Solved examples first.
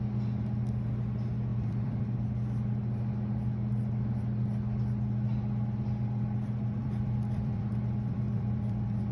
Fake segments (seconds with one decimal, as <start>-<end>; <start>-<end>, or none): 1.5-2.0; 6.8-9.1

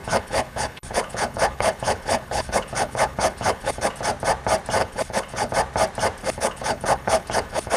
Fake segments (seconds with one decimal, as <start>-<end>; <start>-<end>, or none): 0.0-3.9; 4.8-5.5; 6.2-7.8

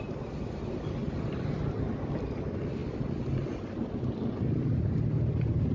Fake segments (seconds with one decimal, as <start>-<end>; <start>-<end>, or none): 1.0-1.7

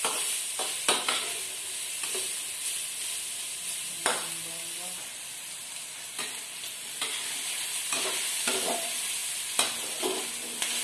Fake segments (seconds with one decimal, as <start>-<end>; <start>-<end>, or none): none